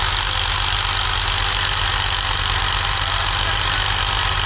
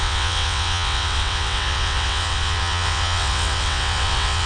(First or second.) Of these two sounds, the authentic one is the first